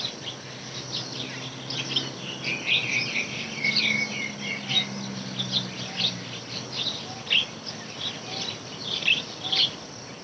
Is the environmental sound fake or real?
real